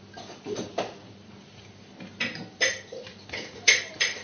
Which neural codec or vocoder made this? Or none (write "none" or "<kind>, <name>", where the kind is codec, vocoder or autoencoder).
none